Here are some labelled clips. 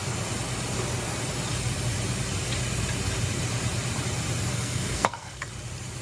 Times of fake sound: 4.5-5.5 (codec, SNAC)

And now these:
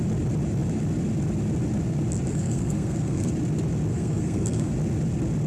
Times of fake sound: 2.3-3.3 (codec, SNAC); 3.9-4.7

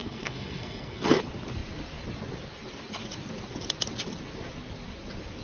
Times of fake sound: 0.0-1.2 (codec, SNAC)